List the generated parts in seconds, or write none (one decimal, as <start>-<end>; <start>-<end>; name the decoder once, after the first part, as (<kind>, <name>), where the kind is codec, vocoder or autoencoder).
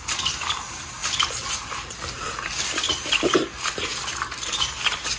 none